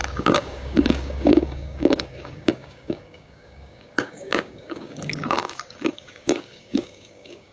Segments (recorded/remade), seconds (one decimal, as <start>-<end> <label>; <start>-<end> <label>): 0.0-7.5 remade